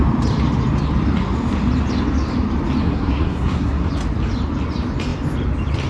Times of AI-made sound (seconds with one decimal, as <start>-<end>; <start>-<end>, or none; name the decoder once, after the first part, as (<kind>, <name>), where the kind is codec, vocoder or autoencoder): 2.8-3.9 (codec, SNAC)